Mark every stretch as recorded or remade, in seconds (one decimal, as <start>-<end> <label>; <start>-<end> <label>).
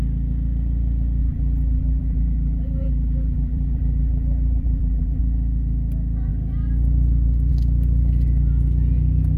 0.0-1.2 recorded; 1.2-5.2 remade; 5.2-9.4 recorded